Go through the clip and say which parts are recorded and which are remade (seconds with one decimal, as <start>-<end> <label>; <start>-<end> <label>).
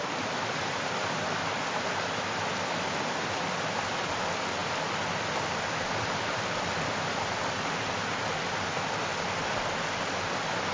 0.0-10.7 recorded